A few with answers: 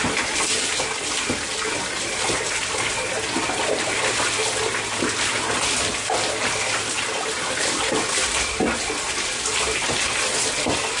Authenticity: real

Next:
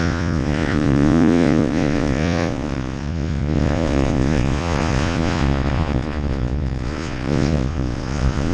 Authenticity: fake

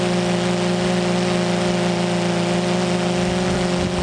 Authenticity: real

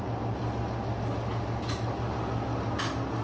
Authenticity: real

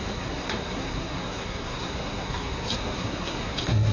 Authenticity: fake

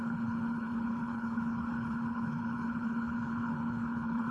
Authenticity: fake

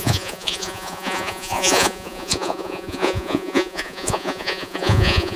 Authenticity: fake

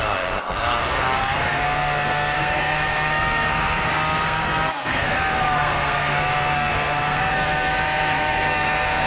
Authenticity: fake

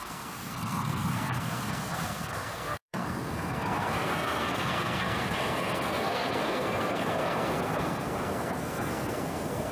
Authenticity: fake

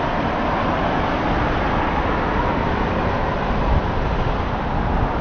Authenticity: real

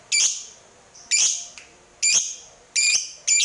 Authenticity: real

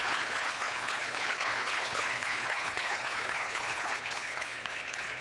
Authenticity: fake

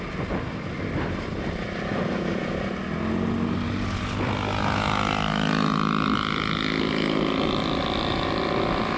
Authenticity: real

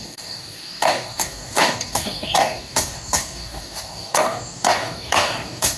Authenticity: fake